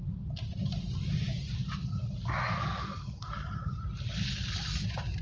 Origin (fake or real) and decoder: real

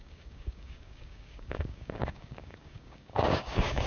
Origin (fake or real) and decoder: fake, codec, DAC